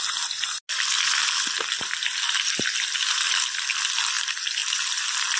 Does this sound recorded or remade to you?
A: recorded